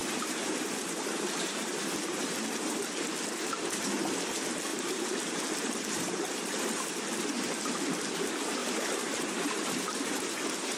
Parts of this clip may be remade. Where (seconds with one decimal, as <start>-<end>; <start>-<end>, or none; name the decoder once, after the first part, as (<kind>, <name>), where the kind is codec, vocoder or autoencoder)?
0.0-1.7 (vocoder, BigVGAN v2); 4.7-5.2; 8.6-10.0